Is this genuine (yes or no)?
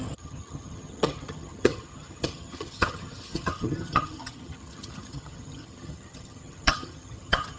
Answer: no